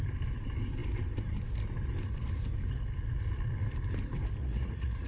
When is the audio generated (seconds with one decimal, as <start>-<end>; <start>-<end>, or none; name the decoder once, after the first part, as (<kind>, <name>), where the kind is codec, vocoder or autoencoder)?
4.4-5.1 (vocoder, Vocos)